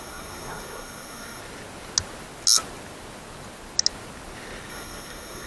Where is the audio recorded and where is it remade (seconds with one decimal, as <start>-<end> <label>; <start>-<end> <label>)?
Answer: 0.0-1.4 remade; 1.4-4.7 recorded; 4.7-5.5 remade